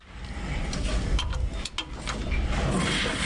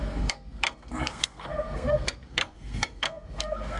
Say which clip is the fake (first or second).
second